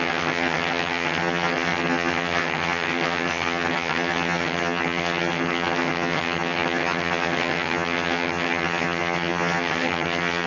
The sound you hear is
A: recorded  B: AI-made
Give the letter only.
B